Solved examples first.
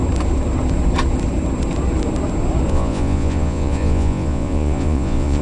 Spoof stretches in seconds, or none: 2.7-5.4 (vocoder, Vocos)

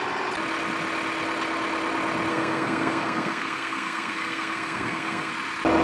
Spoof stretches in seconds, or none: 2.3-5.3 (codec, SNAC)

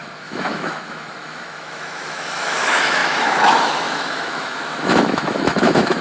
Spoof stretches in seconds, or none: 0.0-6.0 (autoencoder, DAC-VAE)

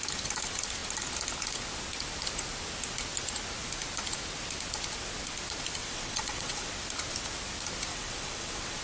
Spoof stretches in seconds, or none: 5.8-6.7 (vocoder, WaveNeXt); 7.9-8.8